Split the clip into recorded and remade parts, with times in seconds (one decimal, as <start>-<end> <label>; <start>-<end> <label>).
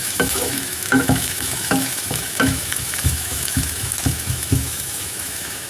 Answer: 0.0-5.7 remade